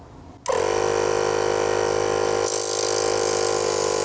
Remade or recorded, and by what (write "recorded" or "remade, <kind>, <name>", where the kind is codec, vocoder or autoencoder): recorded